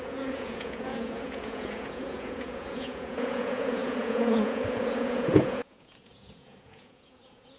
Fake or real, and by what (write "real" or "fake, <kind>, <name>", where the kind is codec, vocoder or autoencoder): fake, vocoder, Vocos